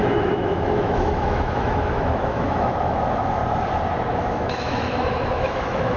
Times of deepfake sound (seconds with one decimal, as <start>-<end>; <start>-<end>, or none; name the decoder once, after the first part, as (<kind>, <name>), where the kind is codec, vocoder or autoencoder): 0.0-3.4 (autoencoder, DAC-VAE); 4.1-6.0